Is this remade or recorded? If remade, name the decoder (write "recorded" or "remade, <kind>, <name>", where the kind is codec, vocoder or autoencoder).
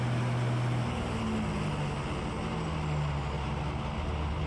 recorded